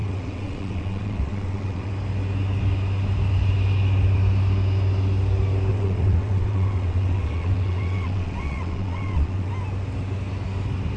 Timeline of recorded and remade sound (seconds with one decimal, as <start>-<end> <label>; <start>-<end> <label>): 0.0-1.9 remade; 1.9-5.7 recorded; 5.7-9.5 remade; 9.5-11.0 recorded